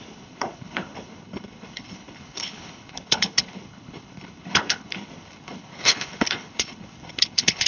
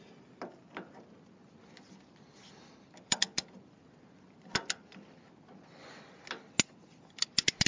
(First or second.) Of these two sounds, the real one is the second